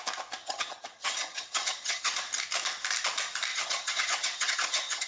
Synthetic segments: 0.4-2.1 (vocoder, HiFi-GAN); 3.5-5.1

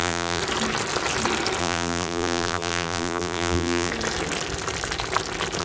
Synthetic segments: 0.0-0.4 (vocoder, BigVGAN v2); 1.6-3.9

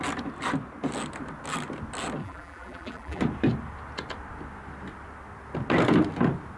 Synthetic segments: 2.2-3.2 (vocoder, BigVGAN v2)

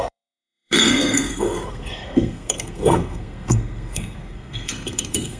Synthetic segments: 0.0-5.4 (codec, SNAC)